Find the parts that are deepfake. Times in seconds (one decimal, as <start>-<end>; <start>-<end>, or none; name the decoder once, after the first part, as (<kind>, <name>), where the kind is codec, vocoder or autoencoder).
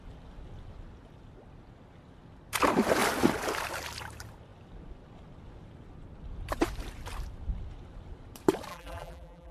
8.7-9.5 (vocoder, BigVGAN v2)